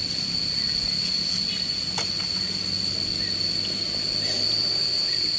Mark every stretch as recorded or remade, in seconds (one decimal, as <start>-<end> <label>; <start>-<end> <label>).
0.0-5.4 recorded